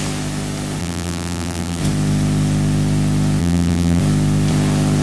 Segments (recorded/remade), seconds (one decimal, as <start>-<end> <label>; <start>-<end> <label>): 0.0-0.8 recorded; 0.8-1.8 remade; 1.8-3.4 recorded; 3.4-4.0 remade; 4.0-5.0 recorded

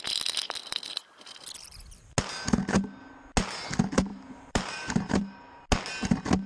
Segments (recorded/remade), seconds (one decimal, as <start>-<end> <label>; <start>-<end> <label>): 0.0-4.1 recorded; 4.1-5.6 remade; 5.6-6.5 recorded

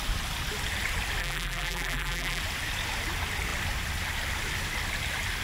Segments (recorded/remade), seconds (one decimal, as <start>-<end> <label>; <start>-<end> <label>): 0.0-1.2 recorded; 1.2-2.4 remade; 2.4-5.4 recorded

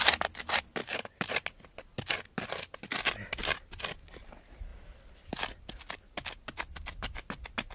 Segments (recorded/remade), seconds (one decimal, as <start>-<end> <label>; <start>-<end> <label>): 0.0-0.8 recorded; 0.8-1.3 remade; 1.3-7.7 recorded

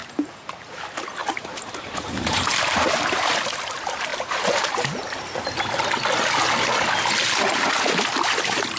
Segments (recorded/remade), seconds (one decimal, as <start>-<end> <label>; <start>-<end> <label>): 0.0-0.5 remade; 0.5-1.2 recorded; 1.2-2.5 remade; 2.5-4.1 recorded; 4.1-5.4 remade; 5.4-8.8 recorded

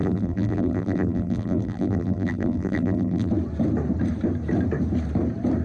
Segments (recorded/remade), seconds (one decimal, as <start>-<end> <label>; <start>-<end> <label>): 0.0-3.3 remade; 3.3-5.6 recorded

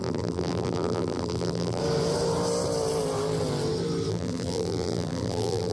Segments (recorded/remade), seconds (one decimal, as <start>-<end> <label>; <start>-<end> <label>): 0.0-1.8 remade; 1.8-4.1 recorded; 4.1-5.7 remade